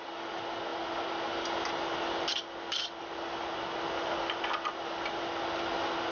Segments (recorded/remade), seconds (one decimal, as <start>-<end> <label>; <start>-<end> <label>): 0.0-6.1 recorded